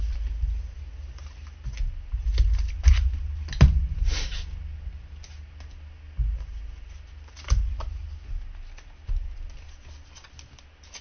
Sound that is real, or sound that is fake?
real